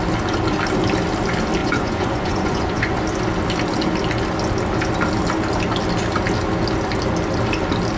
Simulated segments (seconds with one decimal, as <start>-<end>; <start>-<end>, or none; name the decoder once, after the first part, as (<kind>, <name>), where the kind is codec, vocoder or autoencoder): 1.6-3.0 (vocoder, Vocos)